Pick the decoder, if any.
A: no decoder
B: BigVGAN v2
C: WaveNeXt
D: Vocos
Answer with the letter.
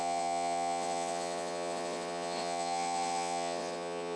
C